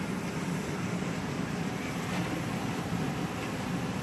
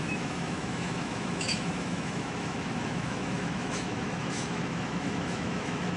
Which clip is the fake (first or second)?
second